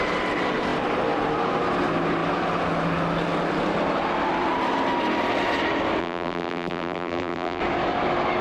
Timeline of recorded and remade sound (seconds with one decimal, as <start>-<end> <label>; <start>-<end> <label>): 0.0-6.0 recorded; 6.0-7.6 remade; 7.6-8.4 recorded